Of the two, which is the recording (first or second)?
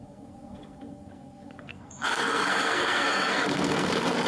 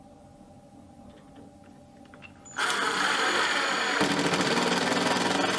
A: second